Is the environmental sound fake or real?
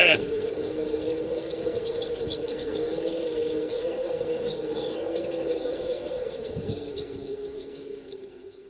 fake